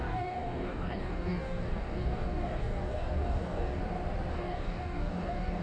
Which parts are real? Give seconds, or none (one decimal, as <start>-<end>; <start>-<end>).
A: 3.8-4.3